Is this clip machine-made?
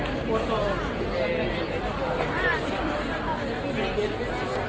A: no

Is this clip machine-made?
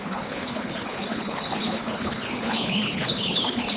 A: yes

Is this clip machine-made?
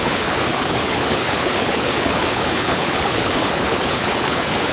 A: yes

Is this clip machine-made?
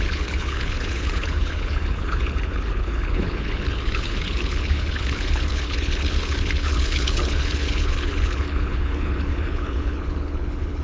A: yes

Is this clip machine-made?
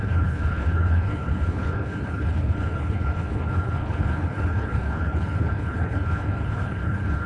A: yes